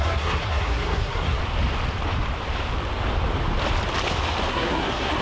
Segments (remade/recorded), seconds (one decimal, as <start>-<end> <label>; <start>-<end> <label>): 0.0-1.4 remade; 1.4-4.5 recorded; 4.5-5.2 remade